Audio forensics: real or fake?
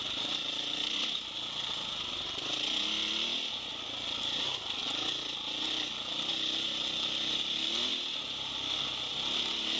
real